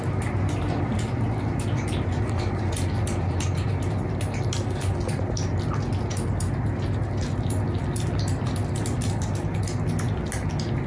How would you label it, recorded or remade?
recorded